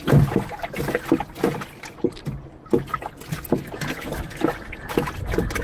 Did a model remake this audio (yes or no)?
no